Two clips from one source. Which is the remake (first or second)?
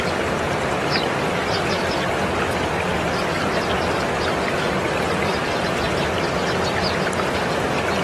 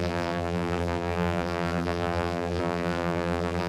second